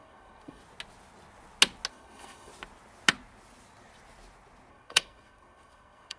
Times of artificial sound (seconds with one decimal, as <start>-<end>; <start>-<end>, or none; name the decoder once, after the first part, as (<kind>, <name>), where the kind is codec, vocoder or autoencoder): 0.0-0.6 (codec, SNAC); 1.9-2.5; 4.7-6.2